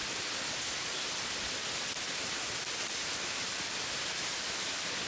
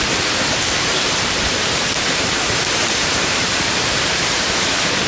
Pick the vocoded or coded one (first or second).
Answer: second